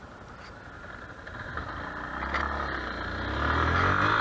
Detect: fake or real real